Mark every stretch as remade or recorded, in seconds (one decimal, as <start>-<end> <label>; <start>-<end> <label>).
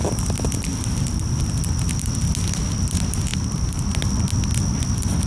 0.0-0.7 recorded; 0.7-1.6 remade; 1.6-5.3 recorded